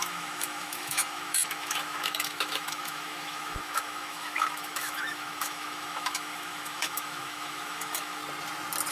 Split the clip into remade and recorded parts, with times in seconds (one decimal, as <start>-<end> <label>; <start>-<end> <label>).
0.0-8.2 remade; 8.2-8.9 recorded